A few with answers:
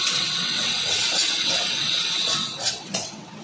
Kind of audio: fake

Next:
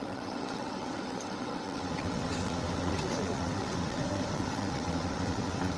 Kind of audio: fake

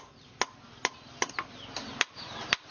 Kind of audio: real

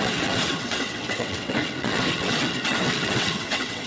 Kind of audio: fake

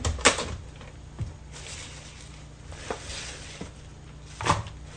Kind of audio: real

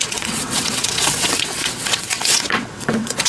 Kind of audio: fake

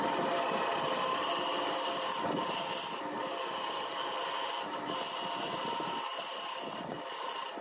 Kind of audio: real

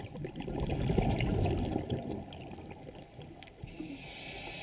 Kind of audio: real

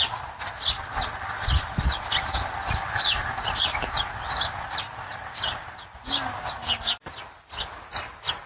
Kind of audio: real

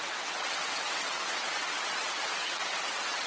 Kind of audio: fake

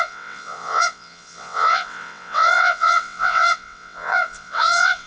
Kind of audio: fake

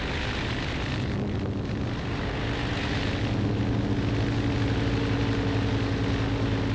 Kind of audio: real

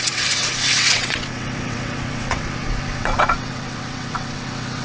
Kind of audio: fake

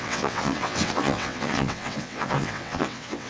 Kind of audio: fake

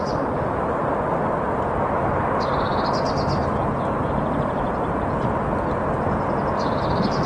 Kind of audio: real